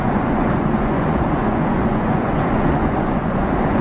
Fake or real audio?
fake